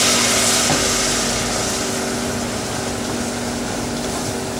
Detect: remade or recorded recorded